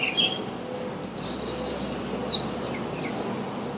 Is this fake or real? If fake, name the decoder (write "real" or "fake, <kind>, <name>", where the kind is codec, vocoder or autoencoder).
real